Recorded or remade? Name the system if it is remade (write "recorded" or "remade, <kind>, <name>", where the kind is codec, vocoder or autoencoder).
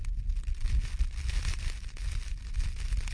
recorded